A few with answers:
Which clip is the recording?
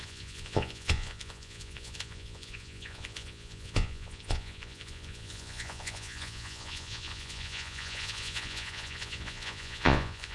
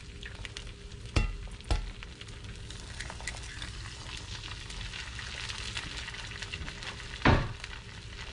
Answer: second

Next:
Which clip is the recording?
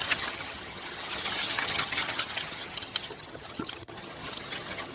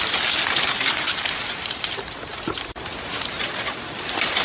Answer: second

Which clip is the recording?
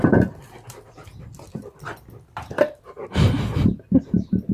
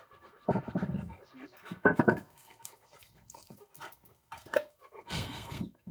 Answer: first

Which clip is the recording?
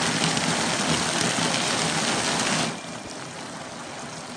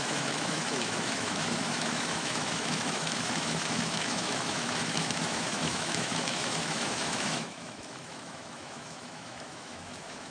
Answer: first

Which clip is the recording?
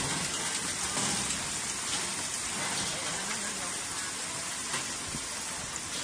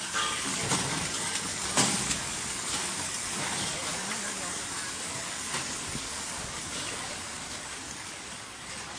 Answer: first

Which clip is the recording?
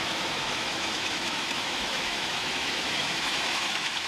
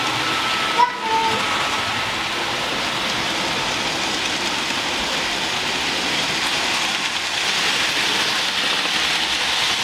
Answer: second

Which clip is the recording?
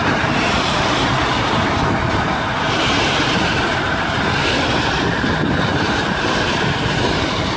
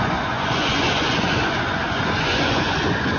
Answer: first